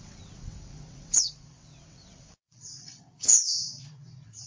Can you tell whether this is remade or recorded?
remade